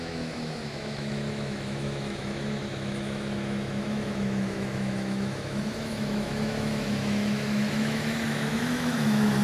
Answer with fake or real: fake